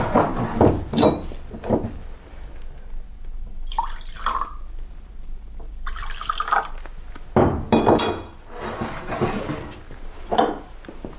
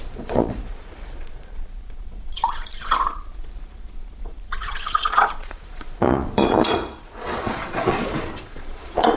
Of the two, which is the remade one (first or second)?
second